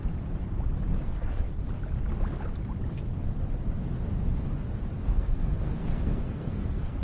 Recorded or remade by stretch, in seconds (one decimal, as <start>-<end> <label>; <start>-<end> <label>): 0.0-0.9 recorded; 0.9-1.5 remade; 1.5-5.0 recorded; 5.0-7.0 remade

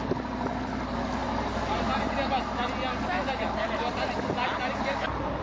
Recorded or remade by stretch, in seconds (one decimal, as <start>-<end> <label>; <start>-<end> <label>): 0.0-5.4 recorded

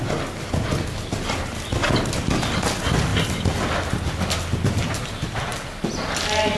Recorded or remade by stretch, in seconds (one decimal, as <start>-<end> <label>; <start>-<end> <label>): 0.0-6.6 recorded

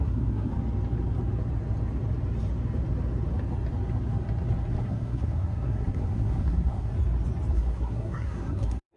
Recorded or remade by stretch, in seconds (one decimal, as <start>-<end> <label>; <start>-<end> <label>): 0.0-0.5 remade; 0.5-4.8 recorded; 4.8-6.9 remade; 6.9-7.5 recorded; 7.5-9.0 remade